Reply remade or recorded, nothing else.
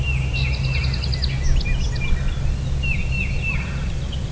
recorded